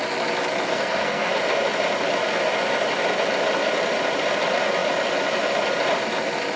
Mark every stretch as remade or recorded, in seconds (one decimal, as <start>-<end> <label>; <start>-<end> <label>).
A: 0.0-0.7 recorded; 0.7-1.3 remade; 1.3-6.6 recorded